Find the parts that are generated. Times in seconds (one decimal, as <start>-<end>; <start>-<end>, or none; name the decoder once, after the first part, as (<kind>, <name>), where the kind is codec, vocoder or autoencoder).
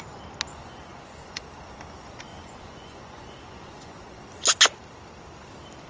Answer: 0.5-1.4 (vocoder, Vocos); 2.3-4.2